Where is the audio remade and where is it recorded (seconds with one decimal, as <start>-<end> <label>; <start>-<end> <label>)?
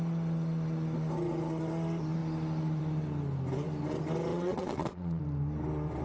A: 0.0-4.3 recorded; 4.3-5.2 remade; 5.2-6.0 recorded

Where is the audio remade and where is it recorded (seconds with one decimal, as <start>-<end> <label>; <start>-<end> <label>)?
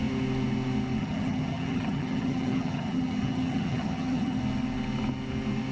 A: 0.0-1.0 recorded; 1.0-4.4 remade; 4.4-5.7 recorded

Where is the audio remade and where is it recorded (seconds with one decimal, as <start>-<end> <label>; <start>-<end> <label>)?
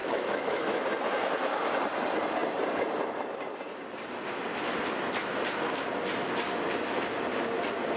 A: 0.0-0.8 remade; 0.8-8.0 recorded